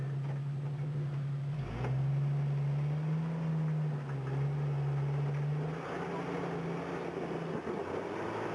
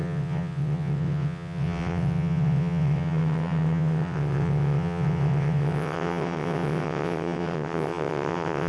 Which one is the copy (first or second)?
second